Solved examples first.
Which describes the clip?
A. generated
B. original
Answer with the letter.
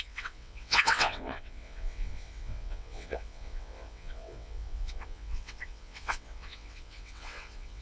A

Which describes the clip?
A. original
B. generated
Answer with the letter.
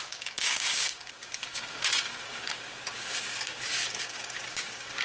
B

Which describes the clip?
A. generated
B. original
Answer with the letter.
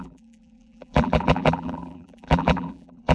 A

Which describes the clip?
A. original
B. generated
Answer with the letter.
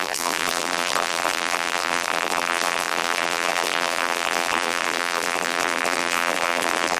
B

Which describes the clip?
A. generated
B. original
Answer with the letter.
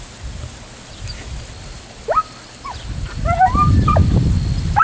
B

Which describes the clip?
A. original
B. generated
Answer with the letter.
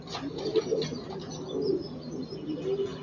A